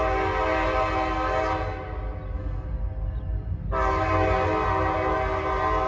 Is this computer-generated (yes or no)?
no